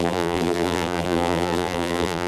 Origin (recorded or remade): remade